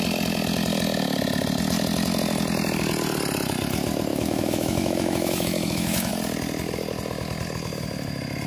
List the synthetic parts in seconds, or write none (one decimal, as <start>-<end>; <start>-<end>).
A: 4.1-6.1